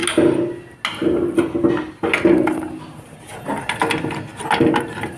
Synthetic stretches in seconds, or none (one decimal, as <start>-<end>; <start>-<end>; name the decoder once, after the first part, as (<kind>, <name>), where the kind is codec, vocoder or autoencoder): none